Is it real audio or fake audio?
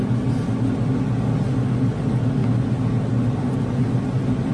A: real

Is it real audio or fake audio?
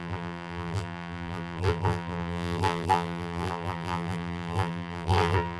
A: fake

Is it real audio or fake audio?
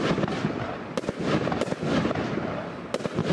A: real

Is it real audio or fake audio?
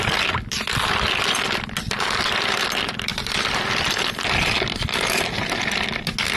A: real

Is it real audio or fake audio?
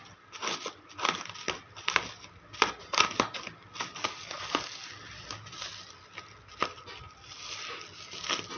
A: real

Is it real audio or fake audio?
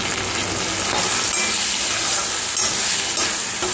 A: real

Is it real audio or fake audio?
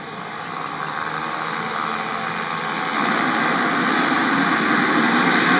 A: real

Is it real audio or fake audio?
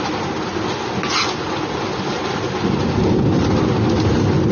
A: real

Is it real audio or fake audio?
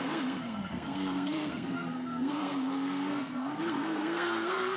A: fake